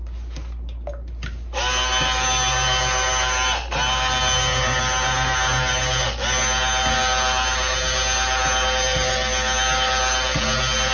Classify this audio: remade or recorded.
recorded